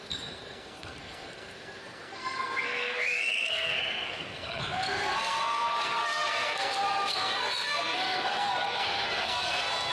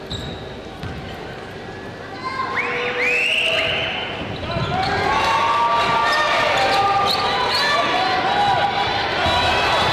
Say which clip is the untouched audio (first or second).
second